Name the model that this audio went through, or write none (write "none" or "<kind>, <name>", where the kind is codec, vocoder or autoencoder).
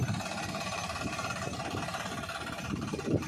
vocoder, BigVGAN v2